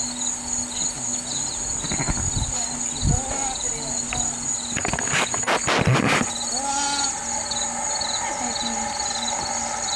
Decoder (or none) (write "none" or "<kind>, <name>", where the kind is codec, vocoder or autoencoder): none